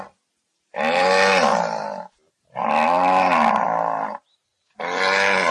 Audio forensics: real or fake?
real